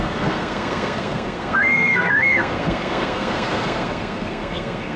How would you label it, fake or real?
fake